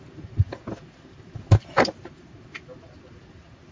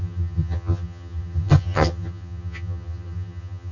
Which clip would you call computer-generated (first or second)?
second